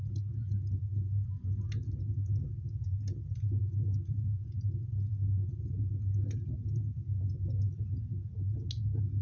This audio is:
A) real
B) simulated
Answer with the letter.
A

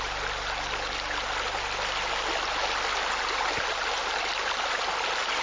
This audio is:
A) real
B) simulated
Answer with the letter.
A